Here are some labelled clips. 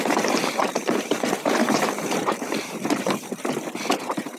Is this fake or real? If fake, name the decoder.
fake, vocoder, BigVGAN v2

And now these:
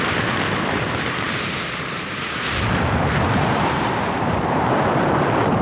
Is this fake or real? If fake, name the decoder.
fake, vocoder, BigVGAN v2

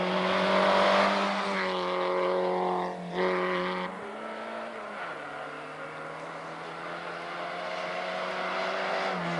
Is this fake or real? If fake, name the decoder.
real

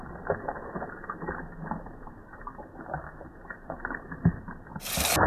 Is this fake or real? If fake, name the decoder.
real